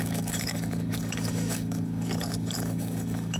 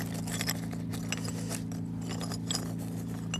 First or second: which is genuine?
second